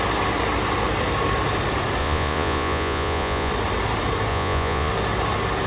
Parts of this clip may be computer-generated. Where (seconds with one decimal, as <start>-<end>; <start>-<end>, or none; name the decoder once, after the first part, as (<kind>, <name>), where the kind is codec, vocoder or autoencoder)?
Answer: 2.0-3.5 (vocoder, Vocos); 4.3-4.9